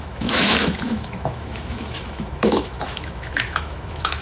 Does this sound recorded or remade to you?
remade